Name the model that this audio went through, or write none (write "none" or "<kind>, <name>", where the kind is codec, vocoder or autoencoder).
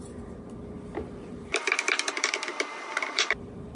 vocoder, BigVGAN v2